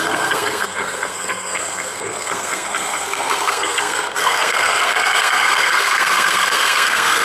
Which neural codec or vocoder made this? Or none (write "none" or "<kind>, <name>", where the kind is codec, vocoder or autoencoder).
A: codec, SNAC